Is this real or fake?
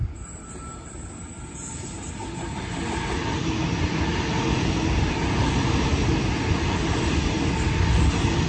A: real